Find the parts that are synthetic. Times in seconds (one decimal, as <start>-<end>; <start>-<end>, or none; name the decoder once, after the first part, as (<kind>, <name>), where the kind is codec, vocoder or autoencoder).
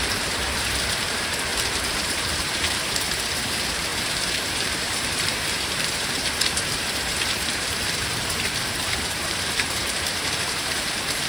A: 0.0-1.5 (vocoder, BigVGAN v2); 2.0-11.3